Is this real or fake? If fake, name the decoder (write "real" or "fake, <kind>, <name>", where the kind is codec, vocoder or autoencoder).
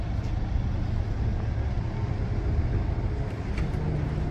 real